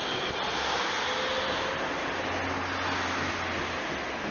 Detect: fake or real real